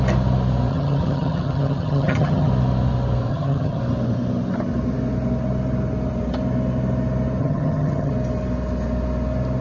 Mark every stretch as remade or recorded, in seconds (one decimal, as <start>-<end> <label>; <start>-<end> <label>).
0.0-0.7 recorded; 0.7-2.5 remade; 2.5-3.3 recorded; 3.3-3.8 remade; 3.8-7.4 recorded; 7.4-8.1 remade; 8.1-9.6 recorded